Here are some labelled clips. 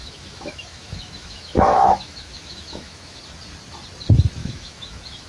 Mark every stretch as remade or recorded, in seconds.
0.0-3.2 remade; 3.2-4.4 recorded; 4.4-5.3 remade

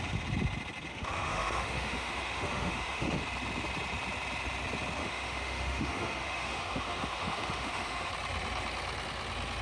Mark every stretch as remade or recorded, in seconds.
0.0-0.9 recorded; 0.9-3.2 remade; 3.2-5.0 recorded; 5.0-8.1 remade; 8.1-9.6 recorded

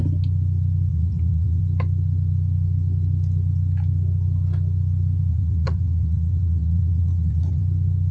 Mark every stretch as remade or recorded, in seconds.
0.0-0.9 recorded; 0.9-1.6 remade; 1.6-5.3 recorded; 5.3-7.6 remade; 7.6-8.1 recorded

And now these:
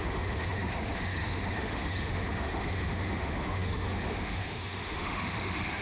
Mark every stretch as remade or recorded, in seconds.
0.0-5.8 remade

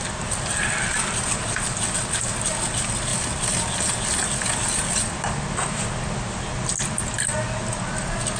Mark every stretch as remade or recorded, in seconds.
0.0-8.4 recorded